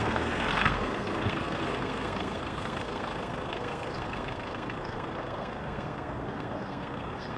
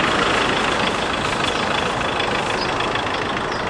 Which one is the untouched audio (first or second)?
second